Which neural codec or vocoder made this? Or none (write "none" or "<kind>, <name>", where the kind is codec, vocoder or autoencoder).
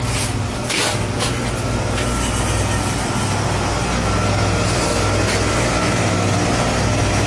none